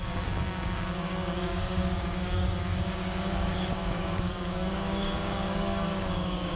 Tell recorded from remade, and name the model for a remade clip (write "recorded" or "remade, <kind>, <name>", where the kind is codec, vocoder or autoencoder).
remade, codec, DAC